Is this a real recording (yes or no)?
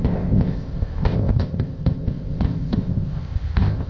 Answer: no